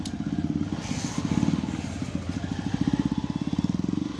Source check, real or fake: real